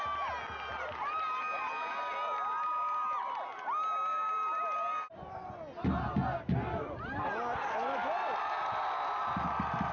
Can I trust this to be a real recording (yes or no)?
yes